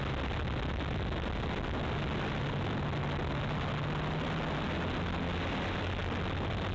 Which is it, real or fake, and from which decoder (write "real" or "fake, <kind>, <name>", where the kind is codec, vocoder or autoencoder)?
real